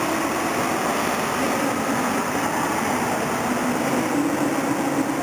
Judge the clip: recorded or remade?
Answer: recorded